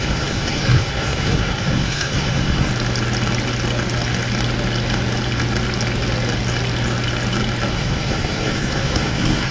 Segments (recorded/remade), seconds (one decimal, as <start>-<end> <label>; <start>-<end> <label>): 0.0-2.7 remade; 2.7-7.7 recorded; 7.7-9.5 remade